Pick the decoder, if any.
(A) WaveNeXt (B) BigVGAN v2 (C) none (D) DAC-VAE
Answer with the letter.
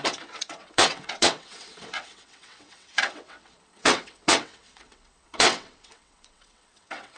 A